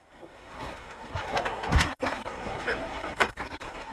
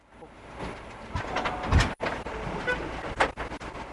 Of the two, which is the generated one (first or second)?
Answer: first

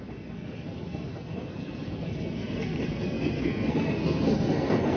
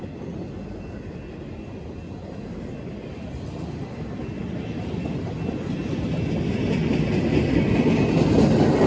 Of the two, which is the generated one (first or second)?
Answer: first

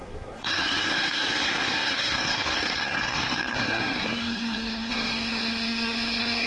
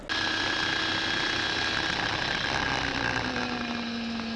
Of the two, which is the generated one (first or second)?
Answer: first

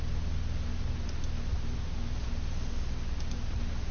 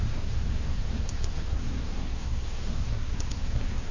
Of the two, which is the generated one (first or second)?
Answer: second